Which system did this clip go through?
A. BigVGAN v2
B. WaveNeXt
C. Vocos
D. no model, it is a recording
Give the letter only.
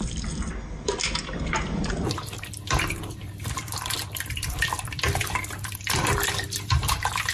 A